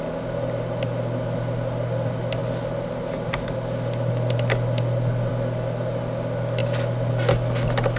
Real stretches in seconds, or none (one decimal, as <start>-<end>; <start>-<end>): 0.0-8.0